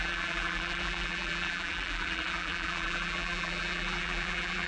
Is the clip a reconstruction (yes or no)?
yes